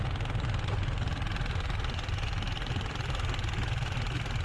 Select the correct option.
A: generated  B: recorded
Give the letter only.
B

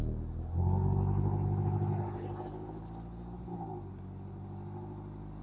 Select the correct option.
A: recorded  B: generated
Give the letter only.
A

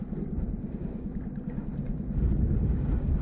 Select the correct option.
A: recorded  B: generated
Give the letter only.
A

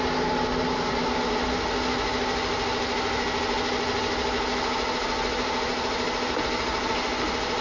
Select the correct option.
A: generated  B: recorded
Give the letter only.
B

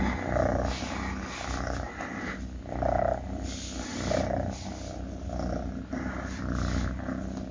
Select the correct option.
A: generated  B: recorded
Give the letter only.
B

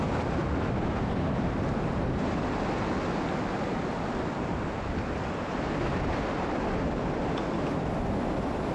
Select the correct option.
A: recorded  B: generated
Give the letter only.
A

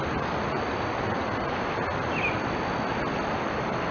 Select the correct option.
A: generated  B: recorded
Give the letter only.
B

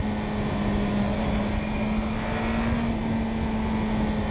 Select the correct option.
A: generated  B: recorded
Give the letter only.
B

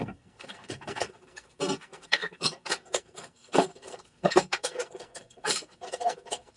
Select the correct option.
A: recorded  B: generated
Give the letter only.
B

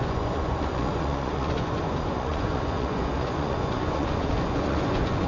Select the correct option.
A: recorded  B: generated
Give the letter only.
B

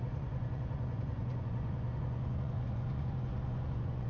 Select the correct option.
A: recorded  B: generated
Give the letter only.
B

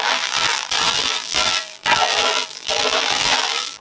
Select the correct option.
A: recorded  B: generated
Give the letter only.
B